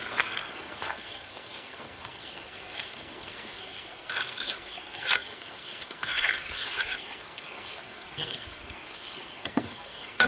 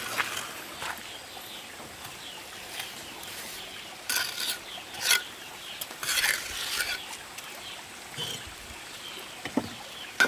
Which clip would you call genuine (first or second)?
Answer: second